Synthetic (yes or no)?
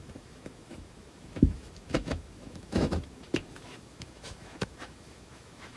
yes